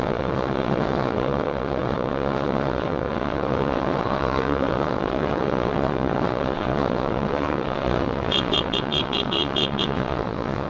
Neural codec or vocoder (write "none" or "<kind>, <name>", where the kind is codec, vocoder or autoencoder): vocoder, WaveNeXt